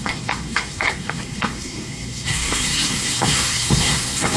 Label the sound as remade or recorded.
remade